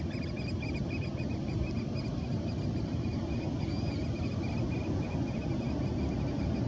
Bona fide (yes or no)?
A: yes